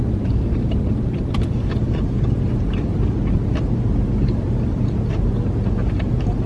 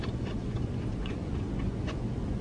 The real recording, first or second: first